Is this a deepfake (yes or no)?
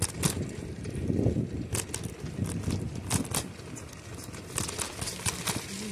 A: no